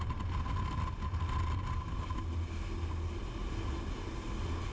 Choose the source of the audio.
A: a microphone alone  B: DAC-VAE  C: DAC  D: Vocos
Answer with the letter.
A